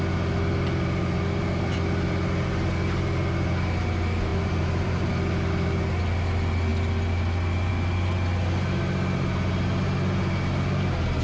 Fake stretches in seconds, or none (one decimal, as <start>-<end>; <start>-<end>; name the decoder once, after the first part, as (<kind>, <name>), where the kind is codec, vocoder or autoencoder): 4.3-5.1 (vocoder, BigVGAN v2)